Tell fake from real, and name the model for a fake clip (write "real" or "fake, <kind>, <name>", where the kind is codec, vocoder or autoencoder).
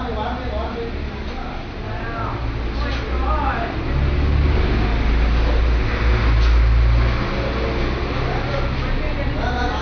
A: real